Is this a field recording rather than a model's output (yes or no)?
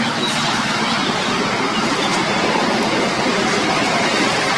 yes